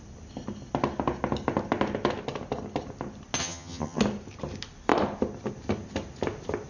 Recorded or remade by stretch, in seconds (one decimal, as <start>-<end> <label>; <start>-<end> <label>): 0.0-3.4 recorded; 3.4-4.0 remade; 4.0-6.7 recorded